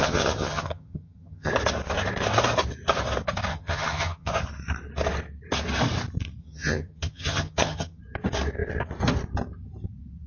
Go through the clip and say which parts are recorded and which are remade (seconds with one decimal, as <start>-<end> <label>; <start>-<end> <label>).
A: 0.0-1.5 remade; 1.5-3.5 recorded; 3.5-4.3 remade; 4.3-6.4 recorded; 6.4-8.0 remade; 8.0-10.3 recorded